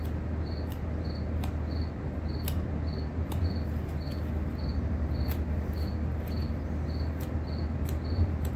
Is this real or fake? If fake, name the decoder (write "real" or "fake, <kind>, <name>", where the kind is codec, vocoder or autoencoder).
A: real